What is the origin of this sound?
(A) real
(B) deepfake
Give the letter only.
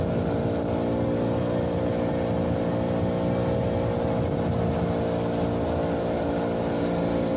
A